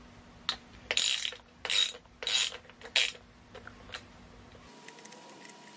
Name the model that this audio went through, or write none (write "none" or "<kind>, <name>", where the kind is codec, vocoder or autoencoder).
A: none